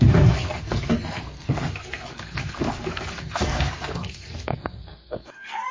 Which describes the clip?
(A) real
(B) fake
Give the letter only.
B